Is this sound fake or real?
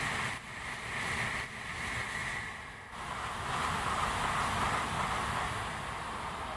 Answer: real